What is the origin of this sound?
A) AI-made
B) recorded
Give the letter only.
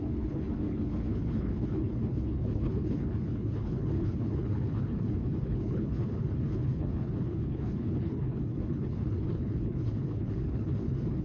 A